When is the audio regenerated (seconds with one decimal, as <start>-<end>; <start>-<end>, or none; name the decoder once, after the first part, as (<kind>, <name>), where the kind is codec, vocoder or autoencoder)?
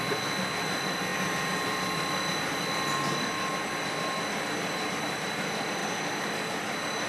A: none